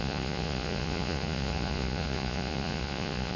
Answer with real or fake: fake